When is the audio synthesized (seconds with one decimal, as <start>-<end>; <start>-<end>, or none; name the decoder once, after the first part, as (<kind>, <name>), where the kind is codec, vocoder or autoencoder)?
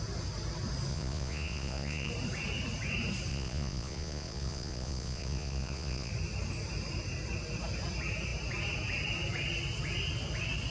0.9-2.1 (vocoder, Vocos); 3.3-6.1